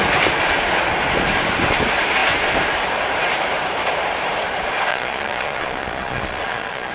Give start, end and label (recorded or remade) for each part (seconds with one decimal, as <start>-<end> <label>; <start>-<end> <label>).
0.0-4.9 recorded; 4.9-6.9 remade